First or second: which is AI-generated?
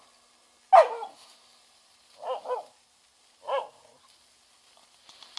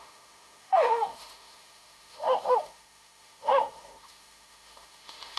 second